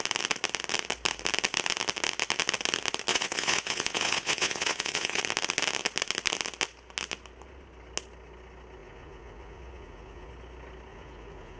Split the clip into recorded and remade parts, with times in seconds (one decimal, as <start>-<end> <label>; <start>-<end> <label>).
0.0-3.1 recorded; 3.1-5.2 remade; 5.2-8.8 recorded; 8.8-10.3 remade; 10.3-10.9 recorded; 10.9-11.6 remade